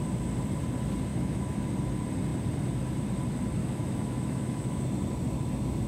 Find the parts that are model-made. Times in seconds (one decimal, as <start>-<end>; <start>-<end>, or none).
1.1-1.7; 3.6-4.8